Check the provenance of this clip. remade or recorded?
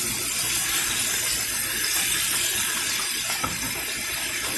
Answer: remade